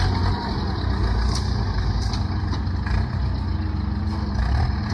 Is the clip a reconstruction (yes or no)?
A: no